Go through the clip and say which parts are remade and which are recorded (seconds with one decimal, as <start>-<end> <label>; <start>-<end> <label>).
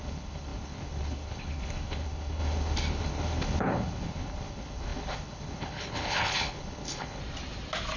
0.0-7.2 remade; 7.2-8.0 recorded